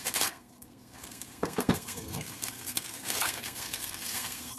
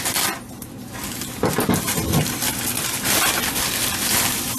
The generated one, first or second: first